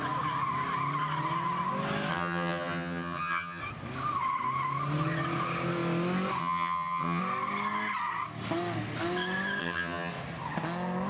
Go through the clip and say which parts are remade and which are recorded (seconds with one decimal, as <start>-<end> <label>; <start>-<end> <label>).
0.0-2.1 recorded; 2.1-3.6 remade; 3.6-6.4 recorded; 6.4-7.2 remade; 7.2-9.6 recorded; 9.6-10.1 remade; 10.1-11.1 recorded